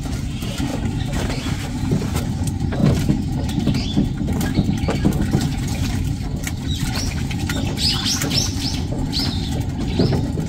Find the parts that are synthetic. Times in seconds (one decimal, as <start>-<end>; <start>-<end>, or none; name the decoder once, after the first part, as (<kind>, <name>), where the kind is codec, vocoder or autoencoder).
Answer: 8.5-9.7 (vocoder, BigVGAN v2)